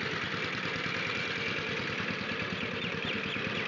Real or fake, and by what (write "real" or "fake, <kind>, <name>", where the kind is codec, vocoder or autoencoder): fake, vocoder, BigVGAN v2